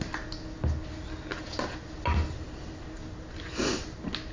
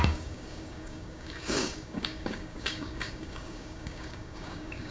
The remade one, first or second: second